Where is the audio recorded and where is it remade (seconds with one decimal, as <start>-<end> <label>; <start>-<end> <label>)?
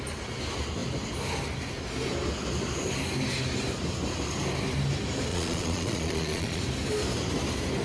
0.0-5.3 recorded; 5.3-6.6 remade; 6.6-7.8 recorded